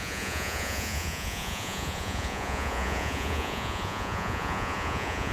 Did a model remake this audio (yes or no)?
yes